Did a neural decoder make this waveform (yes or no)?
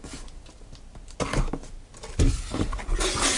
no